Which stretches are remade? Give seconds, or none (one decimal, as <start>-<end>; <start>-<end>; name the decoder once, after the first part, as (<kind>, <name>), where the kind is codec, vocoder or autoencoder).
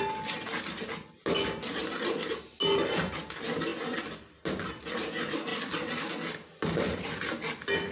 none